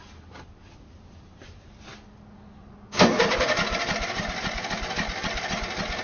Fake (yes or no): no